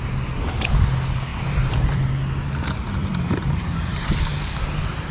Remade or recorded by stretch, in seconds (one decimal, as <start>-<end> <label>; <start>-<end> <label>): 0.0-1.3 recorded; 1.3-2.1 remade; 2.1-3.0 recorded; 3.0-5.1 remade